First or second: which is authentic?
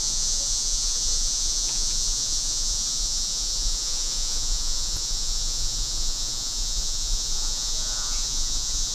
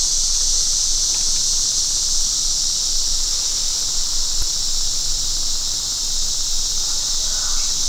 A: second